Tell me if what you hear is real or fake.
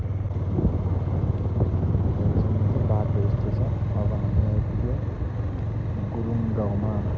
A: real